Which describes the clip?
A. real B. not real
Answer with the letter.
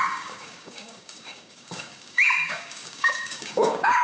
B